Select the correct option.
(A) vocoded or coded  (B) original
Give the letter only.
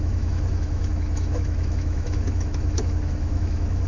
A